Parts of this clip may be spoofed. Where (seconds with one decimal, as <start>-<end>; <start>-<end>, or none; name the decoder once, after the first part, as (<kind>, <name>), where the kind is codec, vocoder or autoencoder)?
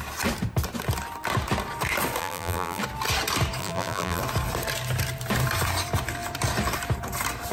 2.2-2.8 (vocoder, BigVGAN v2); 3.6-4.2